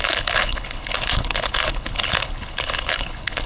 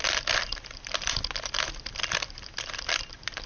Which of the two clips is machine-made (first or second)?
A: first